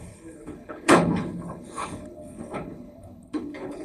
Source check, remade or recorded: remade